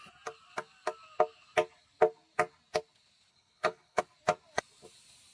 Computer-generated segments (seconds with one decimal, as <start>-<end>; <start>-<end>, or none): 3.3-4.0